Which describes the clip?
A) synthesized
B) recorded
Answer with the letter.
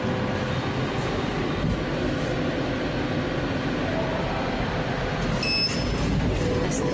B